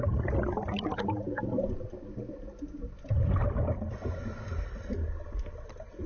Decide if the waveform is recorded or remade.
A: recorded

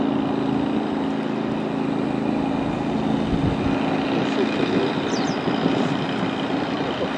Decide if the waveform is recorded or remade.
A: recorded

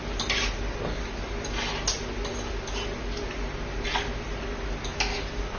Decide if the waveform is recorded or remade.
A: recorded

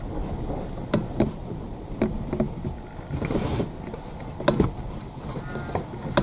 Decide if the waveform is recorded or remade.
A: recorded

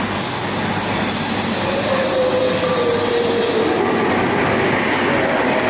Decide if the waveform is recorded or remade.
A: recorded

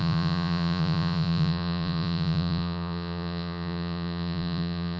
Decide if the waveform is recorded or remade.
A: remade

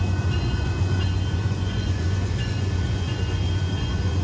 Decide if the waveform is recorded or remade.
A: remade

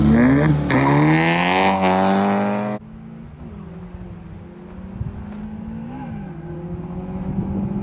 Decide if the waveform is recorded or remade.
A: recorded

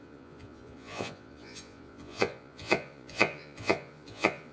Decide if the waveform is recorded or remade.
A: remade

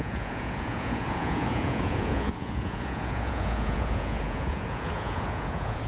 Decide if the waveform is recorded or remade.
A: remade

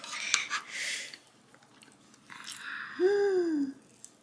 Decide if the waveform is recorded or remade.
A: recorded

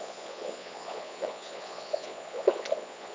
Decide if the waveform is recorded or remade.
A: remade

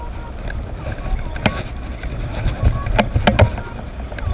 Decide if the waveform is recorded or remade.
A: recorded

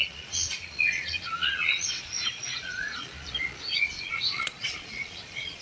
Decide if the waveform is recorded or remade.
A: remade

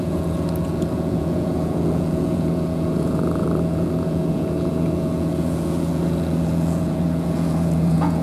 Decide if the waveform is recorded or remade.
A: remade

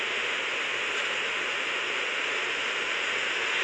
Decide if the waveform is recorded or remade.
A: recorded